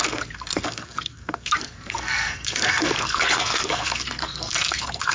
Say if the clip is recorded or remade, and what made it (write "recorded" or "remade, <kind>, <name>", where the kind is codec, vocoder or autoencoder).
remade, codec, SNAC